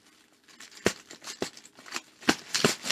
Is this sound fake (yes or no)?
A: no